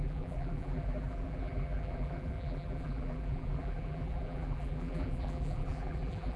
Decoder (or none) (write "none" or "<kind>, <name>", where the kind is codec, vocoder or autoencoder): vocoder, BigVGAN v2